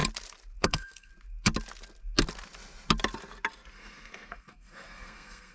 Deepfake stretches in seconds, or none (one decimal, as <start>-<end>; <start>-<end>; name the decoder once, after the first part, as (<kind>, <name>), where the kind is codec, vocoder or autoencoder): 0.6-1.1 (codec, SNAC); 3.7-5.5